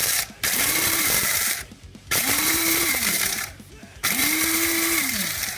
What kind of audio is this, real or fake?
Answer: fake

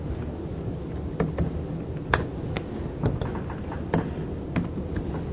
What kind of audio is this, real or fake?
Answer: real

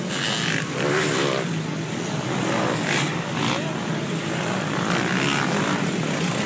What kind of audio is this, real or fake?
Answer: real